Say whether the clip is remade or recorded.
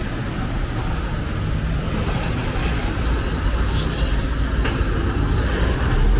recorded